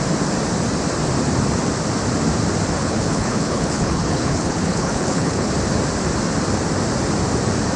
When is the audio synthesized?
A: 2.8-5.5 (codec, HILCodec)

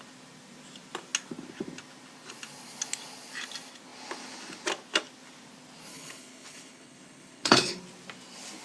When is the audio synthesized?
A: 5.9-7.8 (codec, HILCodec)

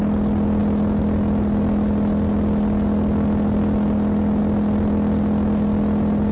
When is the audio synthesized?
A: none

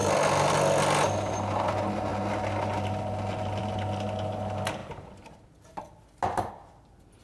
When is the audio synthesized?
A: none

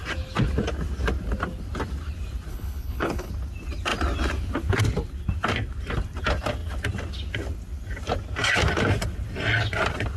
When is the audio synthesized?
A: 2.5-3.3 (codec, HILCodec)

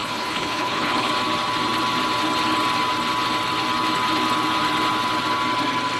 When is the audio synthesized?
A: 0.0-1.1 (codec, HILCodec)